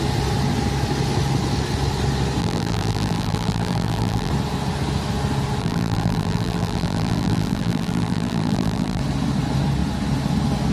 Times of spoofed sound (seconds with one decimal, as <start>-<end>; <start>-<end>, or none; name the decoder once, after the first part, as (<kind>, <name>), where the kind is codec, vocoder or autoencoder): 2.4-4.3 (vocoder, BigVGAN v2); 5.6-9.0